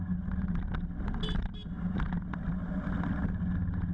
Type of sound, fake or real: real